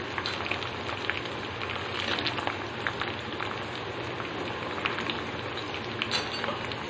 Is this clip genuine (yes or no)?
yes